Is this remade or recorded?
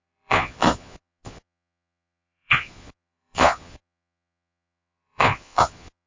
remade